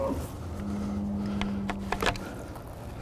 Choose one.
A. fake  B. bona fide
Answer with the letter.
B